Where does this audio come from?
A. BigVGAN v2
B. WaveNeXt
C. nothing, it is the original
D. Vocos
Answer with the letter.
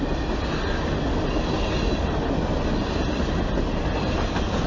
C